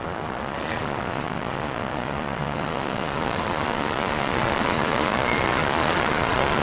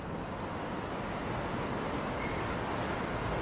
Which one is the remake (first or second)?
first